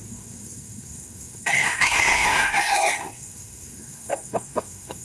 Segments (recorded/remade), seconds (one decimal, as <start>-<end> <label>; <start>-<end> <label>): 0.0-5.0 remade